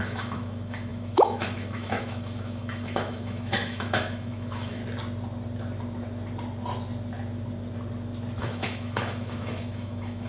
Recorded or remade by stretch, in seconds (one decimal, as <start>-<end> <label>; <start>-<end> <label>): 0.0-4.8 remade; 4.8-8.4 recorded; 8.4-10.3 remade